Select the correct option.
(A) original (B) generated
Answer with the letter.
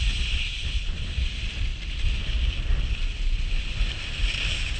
A